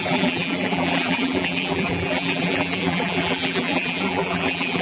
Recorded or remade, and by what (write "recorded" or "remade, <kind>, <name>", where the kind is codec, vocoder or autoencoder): remade, vocoder, BigVGAN v2